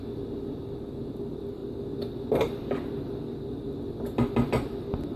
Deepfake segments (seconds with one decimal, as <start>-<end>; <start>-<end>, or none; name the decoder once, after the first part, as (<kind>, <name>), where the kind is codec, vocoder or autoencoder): none